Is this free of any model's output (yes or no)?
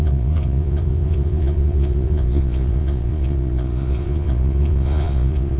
no